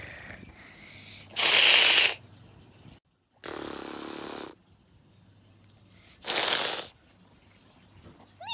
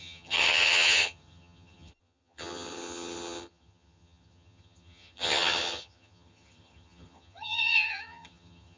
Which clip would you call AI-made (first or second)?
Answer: second